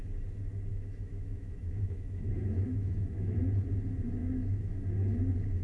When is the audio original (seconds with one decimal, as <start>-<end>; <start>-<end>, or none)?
0.0-0.7; 3.4-4.2; 4.8-5.6